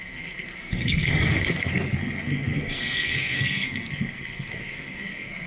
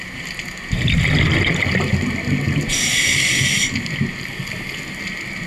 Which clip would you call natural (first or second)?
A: second